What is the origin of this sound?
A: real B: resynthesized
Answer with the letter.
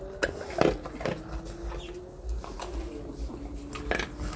A